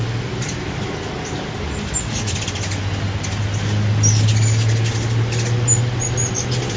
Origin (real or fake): real